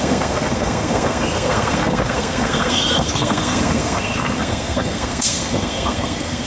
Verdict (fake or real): fake